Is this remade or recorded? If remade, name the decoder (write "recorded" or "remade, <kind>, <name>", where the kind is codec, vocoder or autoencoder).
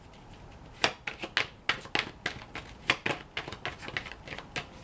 recorded